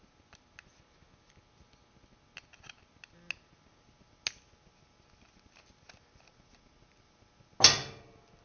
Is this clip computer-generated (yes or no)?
no